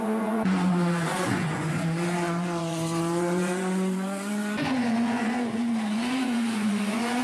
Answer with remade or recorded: remade